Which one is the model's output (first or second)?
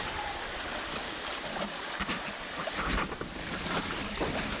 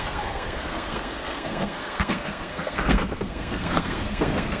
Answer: second